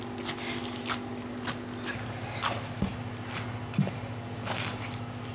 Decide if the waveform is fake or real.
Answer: real